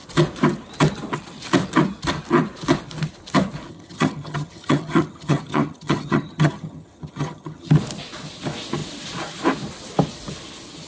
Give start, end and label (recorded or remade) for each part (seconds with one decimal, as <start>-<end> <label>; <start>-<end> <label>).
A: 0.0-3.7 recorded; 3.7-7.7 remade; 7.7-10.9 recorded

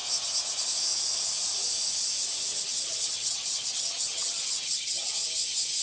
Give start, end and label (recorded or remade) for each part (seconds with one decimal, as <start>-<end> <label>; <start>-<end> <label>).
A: 0.0-2.5 recorded; 2.5-5.1 remade; 5.1-5.8 recorded

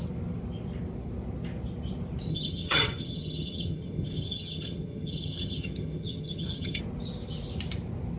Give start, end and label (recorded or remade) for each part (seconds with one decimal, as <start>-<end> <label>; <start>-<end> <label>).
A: 0.0-2.3 recorded; 2.3-6.8 remade; 6.8-8.2 recorded

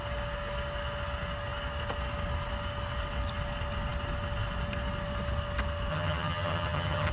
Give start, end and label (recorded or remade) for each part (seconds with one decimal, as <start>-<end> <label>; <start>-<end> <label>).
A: 0.0-5.9 recorded; 5.9-7.1 remade

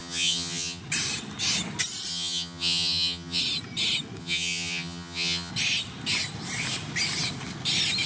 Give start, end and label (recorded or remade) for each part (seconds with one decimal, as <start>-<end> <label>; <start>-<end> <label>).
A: 0.0-0.8 remade; 0.8-2.1 recorded; 2.1-3.4 remade; 3.4-4.2 recorded; 4.2-5.5 remade; 5.5-8.1 recorded